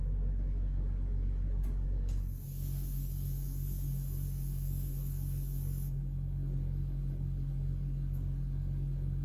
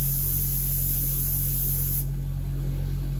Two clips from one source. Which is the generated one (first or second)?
first